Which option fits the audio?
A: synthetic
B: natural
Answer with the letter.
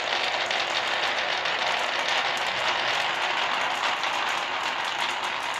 B